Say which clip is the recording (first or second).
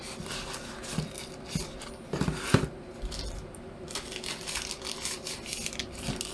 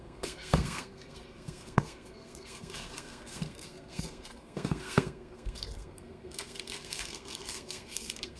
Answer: first